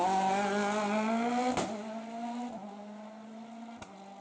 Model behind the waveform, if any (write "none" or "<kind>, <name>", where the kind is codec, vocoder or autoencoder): none